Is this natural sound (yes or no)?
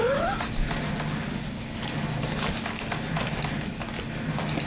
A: yes